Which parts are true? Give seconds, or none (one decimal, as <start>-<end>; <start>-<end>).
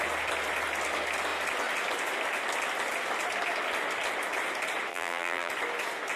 0.0-4.9; 5.5-6.2